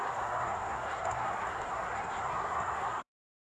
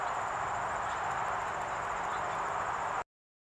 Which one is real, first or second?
second